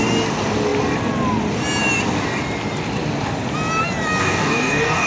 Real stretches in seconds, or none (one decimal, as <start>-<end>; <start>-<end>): 0.0-4.2